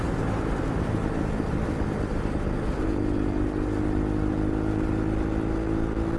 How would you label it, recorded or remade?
recorded